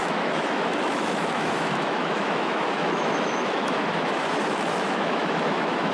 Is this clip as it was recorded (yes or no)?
no